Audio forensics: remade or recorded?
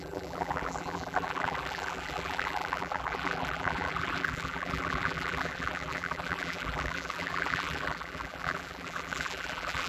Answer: remade